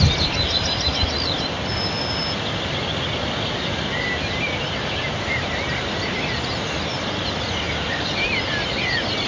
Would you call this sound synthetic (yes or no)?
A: no